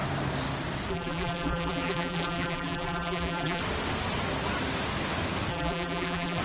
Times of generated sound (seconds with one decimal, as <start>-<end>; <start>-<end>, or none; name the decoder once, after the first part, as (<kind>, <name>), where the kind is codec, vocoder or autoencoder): 0.9-3.6 (vocoder, BigVGAN v2); 5.5-6.4